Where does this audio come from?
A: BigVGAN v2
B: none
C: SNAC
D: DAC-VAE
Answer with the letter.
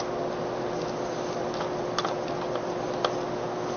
B